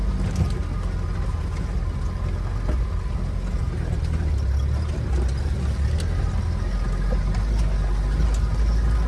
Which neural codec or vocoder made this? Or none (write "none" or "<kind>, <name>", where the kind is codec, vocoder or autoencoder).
none